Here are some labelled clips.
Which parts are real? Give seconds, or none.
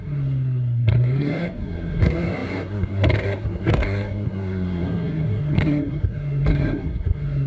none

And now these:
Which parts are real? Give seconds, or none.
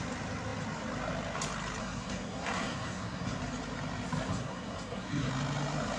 0.0-1.8; 3.4-4.3; 5.3-6.0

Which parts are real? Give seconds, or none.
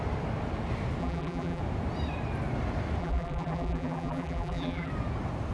0.0-1.0; 1.6-3.0; 4.9-5.5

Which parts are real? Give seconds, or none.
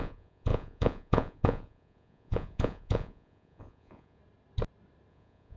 4.2-5.1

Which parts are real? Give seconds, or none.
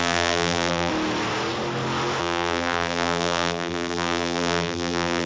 0.9-2.2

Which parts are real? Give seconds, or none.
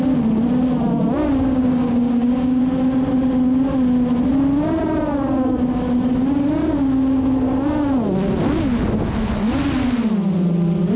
0.0-1.5; 2.6-11.0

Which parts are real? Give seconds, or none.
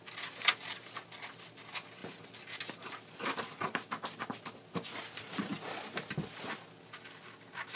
0.0-7.8